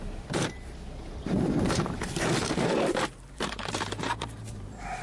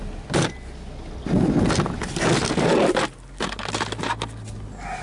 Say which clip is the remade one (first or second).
first